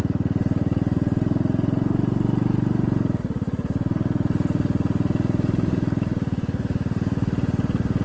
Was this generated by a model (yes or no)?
no